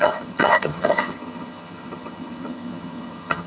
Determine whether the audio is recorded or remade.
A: remade